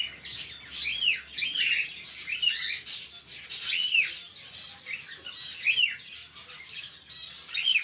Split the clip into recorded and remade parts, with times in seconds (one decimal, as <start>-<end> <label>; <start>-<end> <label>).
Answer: 0.0-6.2 recorded; 6.2-6.8 remade; 6.8-7.8 recorded